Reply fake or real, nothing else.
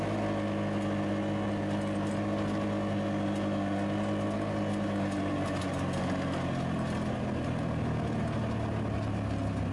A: real